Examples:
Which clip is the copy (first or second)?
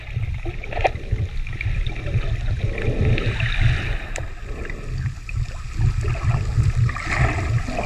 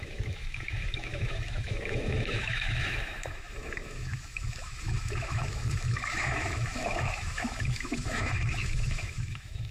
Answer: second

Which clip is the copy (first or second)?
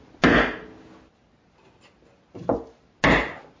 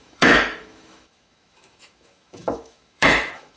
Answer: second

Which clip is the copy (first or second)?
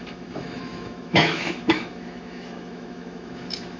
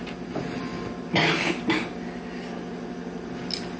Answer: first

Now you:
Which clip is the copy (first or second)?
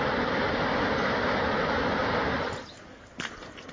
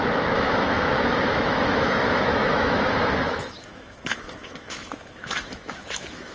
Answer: second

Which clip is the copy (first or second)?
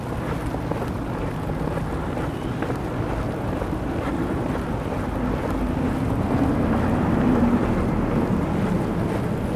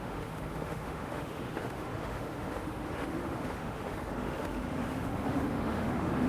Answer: second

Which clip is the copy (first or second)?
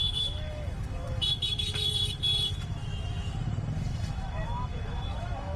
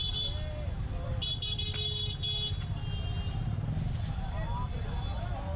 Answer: first